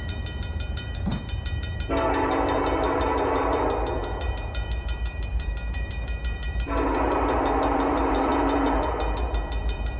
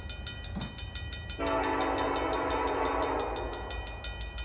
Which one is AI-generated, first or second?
first